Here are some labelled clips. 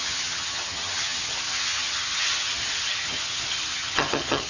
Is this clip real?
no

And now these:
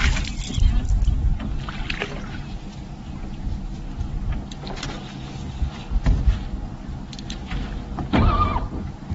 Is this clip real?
yes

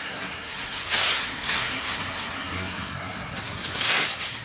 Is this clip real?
no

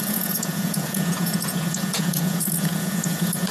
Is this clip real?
no